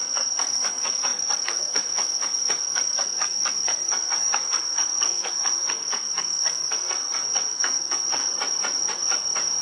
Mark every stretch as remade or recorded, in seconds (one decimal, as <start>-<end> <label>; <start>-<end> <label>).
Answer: 0.0-8.2 remade; 8.2-9.6 recorded